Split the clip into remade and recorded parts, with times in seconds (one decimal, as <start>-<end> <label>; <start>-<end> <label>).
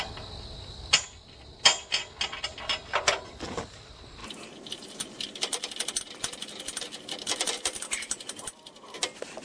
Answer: 0.0-9.4 recorded